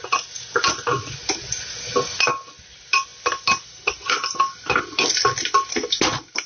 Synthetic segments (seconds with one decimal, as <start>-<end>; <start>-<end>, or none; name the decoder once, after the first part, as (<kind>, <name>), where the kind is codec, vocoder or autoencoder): none